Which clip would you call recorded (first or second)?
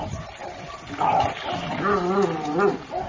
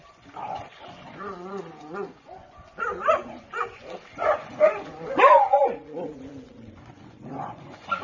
first